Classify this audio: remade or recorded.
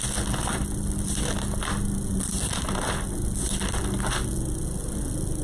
recorded